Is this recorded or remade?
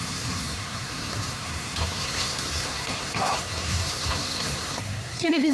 remade